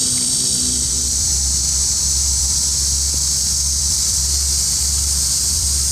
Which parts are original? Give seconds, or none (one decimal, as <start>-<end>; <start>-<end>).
2.7-3.8; 4.2-4.9